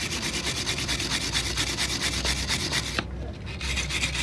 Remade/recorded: recorded